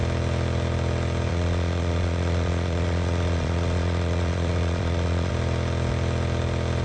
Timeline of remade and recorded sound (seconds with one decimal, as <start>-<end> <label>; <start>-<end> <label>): 0.0-1.3 recorded; 1.3-5.3 remade; 5.3-6.8 recorded